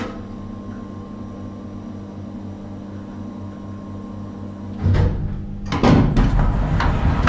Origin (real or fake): real